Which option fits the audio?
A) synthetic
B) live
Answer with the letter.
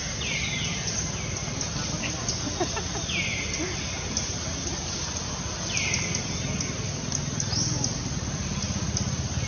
B